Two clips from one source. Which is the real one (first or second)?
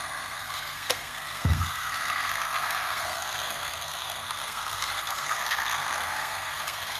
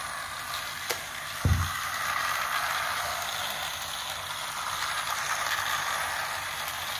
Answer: second